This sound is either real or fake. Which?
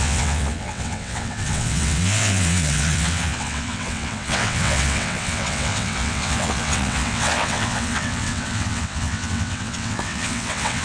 fake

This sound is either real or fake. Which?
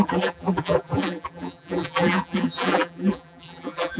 fake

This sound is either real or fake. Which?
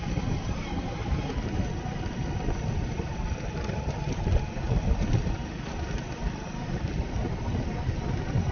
real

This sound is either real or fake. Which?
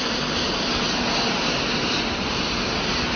real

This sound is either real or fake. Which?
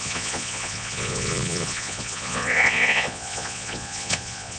fake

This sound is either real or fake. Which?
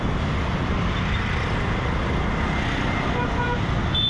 real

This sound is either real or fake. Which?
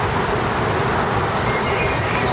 real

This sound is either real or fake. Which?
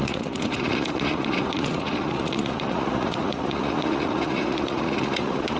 fake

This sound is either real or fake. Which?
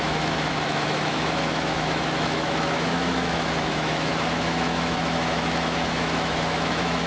fake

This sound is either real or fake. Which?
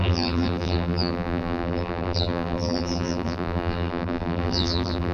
fake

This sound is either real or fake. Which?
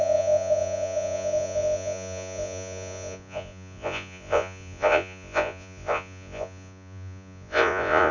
fake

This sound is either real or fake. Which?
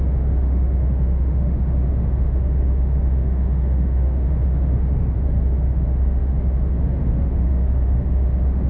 fake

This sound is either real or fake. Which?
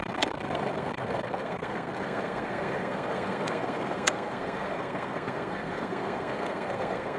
fake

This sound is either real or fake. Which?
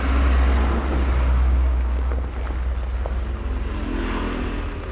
real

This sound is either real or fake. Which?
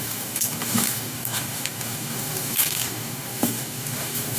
fake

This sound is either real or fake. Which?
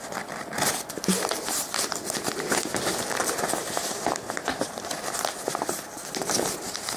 fake